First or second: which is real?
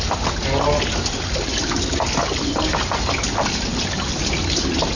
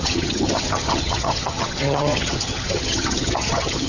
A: first